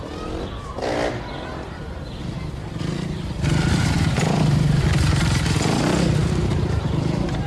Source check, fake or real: fake